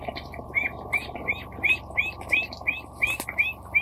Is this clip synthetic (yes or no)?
no